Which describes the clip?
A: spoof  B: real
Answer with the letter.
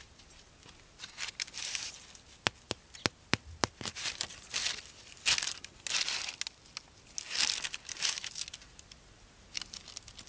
B